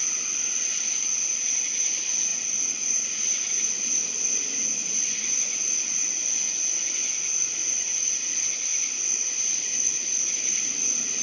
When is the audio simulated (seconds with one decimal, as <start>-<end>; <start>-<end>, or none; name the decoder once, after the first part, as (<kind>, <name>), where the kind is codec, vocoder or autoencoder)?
4.8-5.8 (vocoder, Vocos); 8.7-11.2